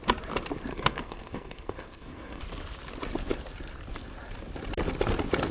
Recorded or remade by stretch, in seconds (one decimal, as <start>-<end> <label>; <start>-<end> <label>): 0.0-0.7 recorded; 0.7-2.4 remade; 2.4-5.5 recorded